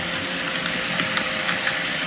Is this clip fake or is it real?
fake